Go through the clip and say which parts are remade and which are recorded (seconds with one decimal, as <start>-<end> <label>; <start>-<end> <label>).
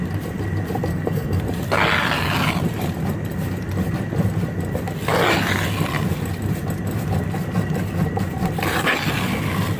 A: 0.0-0.9 recorded; 0.9-1.4 remade; 1.4-9.8 recorded